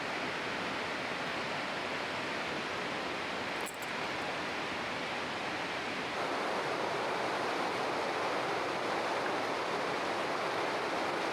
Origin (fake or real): real